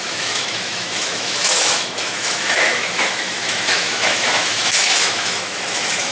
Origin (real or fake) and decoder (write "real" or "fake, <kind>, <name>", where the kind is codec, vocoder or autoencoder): fake, autoencoder, DAC-VAE